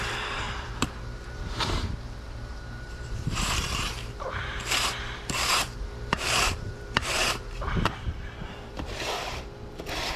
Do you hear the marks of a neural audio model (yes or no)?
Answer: yes